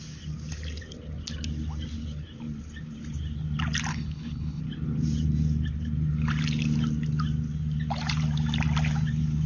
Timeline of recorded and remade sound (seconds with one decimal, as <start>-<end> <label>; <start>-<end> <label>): 0.0-3.9 recorded; 3.9-4.6 remade; 4.6-9.5 recorded